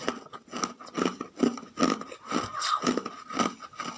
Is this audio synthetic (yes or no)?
no